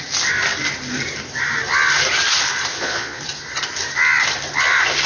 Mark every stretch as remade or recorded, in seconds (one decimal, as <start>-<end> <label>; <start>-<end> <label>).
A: 0.0-2.7 recorded; 2.7-3.2 remade; 3.2-5.1 recorded